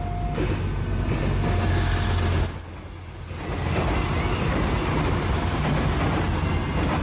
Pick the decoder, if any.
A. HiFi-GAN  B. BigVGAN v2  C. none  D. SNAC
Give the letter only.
C